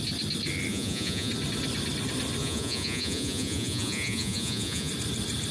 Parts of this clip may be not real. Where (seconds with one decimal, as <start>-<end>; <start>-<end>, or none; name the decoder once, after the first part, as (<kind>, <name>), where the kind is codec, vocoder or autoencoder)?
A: 0.7-1.3 (vocoder, Vocos); 2.4-4.9